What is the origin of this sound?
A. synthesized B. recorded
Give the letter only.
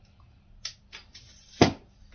B